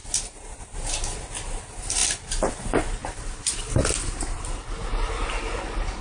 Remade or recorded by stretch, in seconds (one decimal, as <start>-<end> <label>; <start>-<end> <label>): 0.0-2.0 recorded; 2.0-2.5 remade; 2.5-3.0 recorded; 3.0-3.8 remade; 3.8-6.0 recorded